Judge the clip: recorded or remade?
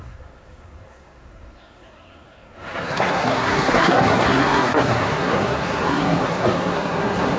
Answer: remade